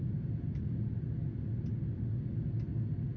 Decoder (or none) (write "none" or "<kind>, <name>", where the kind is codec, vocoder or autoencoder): none